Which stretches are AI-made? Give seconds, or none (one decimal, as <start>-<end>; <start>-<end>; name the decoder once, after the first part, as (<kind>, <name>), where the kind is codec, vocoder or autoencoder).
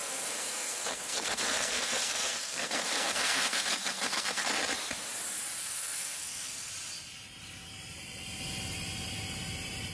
0.0-4.5 (codec, SNAC); 5.6-6.7